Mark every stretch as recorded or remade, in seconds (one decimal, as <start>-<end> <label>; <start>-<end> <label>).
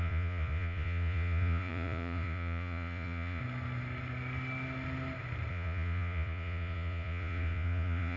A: 0.0-3.4 remade; 3.4-5.5 recorded; 5.5-8.2 remade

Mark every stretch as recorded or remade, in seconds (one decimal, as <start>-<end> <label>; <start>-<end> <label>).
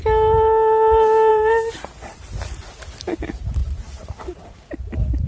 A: 0.0-1.3 recorded; 1.3-3.2 remade; 3.2-3.6 recorded; 3.6-4.7 remade; 4.7-5.3 recorded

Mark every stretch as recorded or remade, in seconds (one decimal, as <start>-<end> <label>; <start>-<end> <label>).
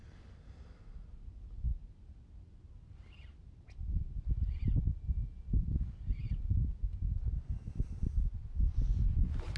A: 0.0-9.6 recorded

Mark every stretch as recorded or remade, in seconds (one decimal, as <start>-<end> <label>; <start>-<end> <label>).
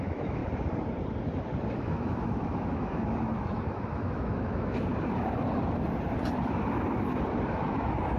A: 0.0-0.4 remade; 0.4-1.8 recorded; 1.8-4.9 remade; 4.9-7.5 recorded; 7.5-8.2 remade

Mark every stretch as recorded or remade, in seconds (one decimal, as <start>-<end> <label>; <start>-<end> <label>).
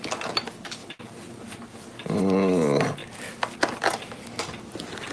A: 0.0-0.8 recorded; 0.8-2.2 remade; 2.2-5.1 recorded